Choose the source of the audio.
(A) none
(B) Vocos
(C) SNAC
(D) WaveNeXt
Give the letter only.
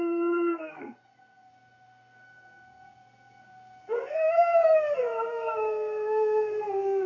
C